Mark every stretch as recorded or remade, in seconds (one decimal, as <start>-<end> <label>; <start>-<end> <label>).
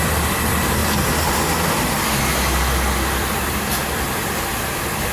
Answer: 0.0-0.8 remade; 0.8-3.1 recorded; 3.1-5.1 remade